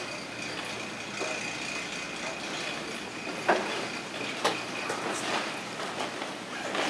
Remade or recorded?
recorded